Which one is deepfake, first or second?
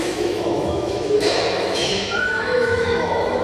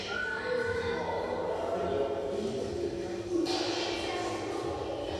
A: first